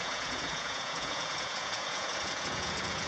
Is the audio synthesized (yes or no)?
yes